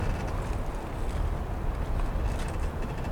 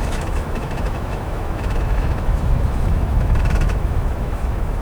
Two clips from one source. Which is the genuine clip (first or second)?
first